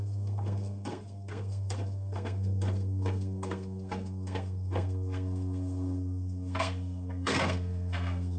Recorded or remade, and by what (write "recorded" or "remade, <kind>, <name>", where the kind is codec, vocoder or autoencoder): remade, codec, SNAC